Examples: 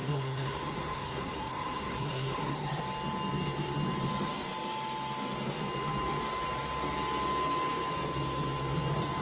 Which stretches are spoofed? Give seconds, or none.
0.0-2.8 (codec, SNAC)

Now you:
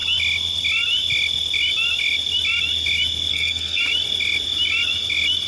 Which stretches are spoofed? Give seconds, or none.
3.3-3.8 (codec, SNAC)

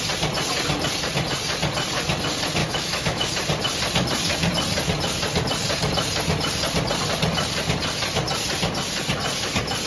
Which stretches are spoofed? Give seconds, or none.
2.6-3.3 (autoencoder, DAC-VAE)

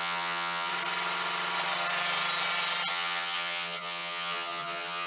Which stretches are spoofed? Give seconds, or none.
0.0-0.7 (vocoder, HiFi-GAN); 2.9-5.1

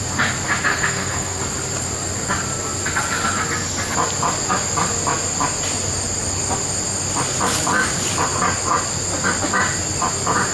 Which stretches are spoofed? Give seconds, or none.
0.7-1.4 (codec, SNAC)

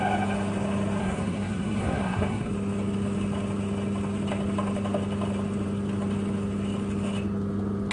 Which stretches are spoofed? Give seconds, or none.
1.0-2.5 (codec, SNAC)

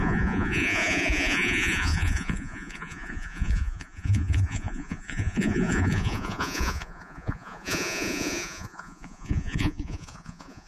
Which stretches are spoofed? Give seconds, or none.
0.0-10.7 (vocoder, Vocos)